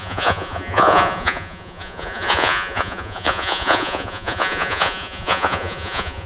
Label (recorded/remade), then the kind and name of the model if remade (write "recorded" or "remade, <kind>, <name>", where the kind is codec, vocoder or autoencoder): remade, vocoder, Vocos